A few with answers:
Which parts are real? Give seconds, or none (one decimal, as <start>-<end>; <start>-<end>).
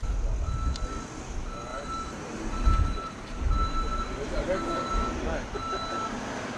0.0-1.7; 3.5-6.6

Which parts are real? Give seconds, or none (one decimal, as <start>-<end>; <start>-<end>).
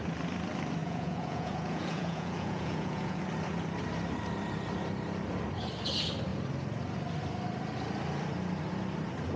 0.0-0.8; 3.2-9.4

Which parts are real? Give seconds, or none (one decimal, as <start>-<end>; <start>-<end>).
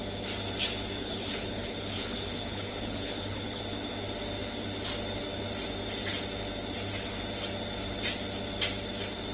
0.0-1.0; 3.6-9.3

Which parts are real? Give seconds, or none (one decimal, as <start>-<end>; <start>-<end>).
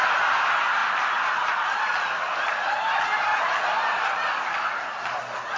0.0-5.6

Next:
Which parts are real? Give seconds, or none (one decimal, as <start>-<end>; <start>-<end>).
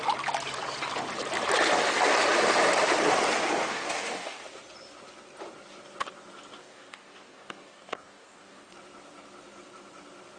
0.0-3.7; 4.4-6.6; 8.7-10.4